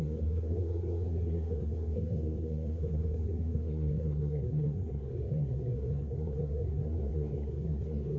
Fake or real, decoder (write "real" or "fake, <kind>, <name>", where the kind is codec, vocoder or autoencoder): fake, codec, SNAC